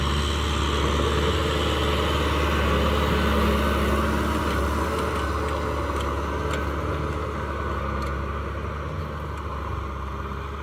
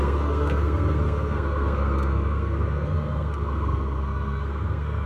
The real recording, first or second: first